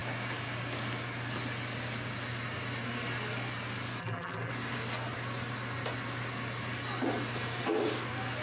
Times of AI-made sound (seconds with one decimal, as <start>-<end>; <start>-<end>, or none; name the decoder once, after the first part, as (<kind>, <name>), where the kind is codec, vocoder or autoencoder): 4.0-4.5 (vocoder, BigVGAN v2)